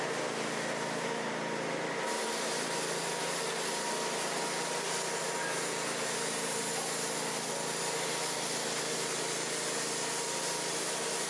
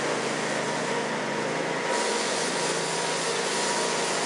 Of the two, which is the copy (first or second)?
second